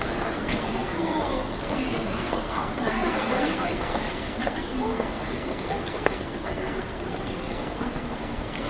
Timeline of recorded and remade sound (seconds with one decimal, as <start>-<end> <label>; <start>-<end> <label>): 0.0-8.7 remade